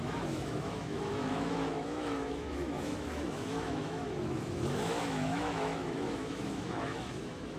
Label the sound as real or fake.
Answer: fake